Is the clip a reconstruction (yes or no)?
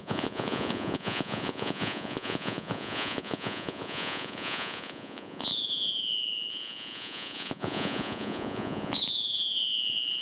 yes